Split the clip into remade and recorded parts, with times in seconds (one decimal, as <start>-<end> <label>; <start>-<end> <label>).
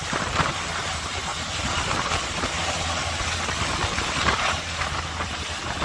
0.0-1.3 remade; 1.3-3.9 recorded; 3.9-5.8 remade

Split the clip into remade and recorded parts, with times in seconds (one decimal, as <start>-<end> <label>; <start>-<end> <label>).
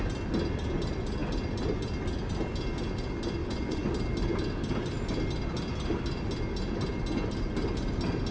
0.0-3.4 recorded; 3.4-3.9 remade; 3.9-8.3 recorded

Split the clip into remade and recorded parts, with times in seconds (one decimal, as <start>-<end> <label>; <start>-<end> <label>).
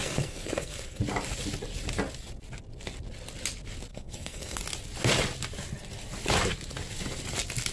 0.0-1.0 remade; 1.0-3.9 recorded; 3.9-4.6 remade; 4.6-7.7 recorded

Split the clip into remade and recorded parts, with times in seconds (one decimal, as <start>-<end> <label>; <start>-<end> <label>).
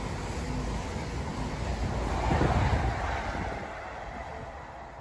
0.0-5.0 recorded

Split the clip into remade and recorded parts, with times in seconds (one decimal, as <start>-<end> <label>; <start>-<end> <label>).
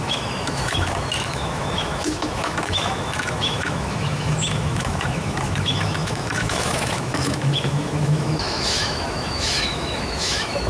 0.0-10.7 remade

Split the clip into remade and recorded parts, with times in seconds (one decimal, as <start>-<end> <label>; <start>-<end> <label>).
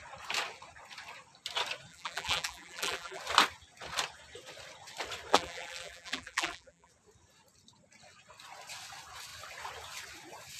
0.0-1.9 recorded; 1.9-3.2 remade; 3.2-5.3 recorded; 5.3-6.9 remade; 6.9-10.6 recorded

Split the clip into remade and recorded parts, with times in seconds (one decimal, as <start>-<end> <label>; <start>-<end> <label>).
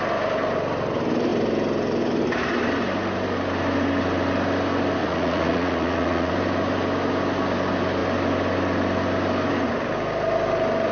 0.0-5.0 recorded; 5.0-6.3 remade; 6.3-10.9 recorded